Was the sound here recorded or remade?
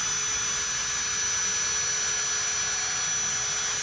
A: recorded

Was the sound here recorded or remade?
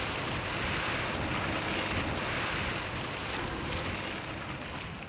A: recorded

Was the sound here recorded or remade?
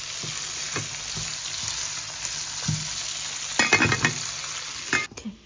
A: recorded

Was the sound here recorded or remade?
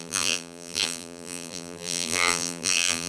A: remade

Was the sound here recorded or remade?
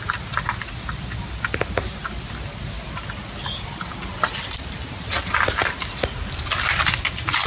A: recorded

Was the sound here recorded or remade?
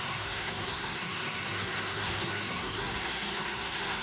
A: remade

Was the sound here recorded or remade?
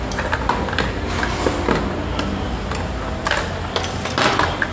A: recorded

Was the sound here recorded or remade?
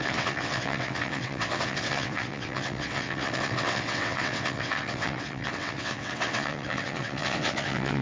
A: remade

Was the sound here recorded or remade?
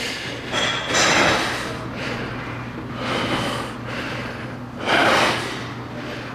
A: recorded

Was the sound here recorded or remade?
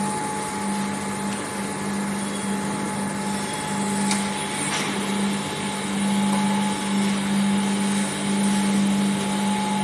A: recorded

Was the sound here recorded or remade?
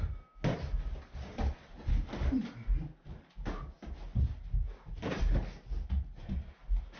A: recorded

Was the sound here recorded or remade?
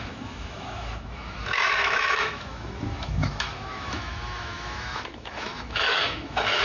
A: remade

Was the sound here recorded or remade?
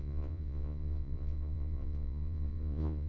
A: remade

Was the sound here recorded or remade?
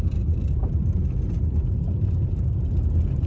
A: remade